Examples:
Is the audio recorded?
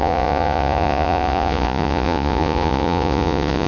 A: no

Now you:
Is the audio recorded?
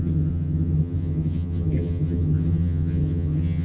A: no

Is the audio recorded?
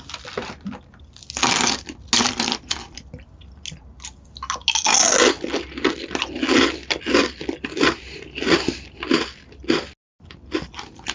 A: yes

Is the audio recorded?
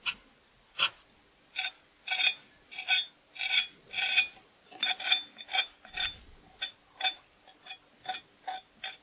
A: yes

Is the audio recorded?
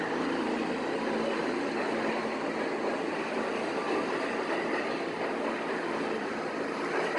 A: yes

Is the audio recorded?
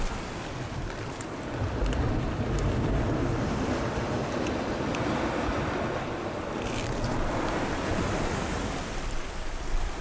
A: yes